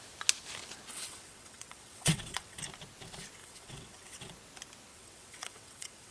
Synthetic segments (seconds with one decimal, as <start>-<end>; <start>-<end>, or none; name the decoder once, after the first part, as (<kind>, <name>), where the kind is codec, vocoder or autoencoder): 0.9-2.6 (vocoder, WaveNeXt); 3.4-4.3; 4.9-6.1